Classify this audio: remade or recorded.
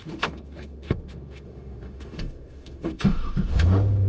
remade